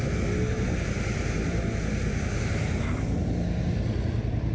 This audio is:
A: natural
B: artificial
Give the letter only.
A